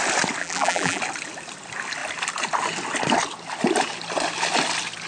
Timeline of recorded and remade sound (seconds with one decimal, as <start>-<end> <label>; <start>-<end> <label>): 0.0-0.4 recorded; 0.4-1.0 remade; 1.0-5.1 recorded